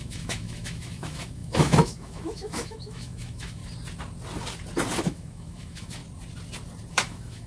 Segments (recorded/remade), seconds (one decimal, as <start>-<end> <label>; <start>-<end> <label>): 0.0-3.6 remade; 3.6-5.0 recorded; 5.0-6.0 remade; 6.0-6.9 recorded; 6.9-7.5 remade